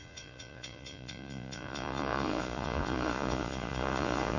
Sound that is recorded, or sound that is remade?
remade